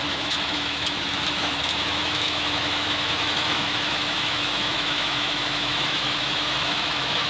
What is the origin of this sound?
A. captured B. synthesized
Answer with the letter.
B